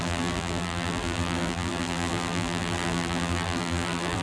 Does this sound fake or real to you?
fake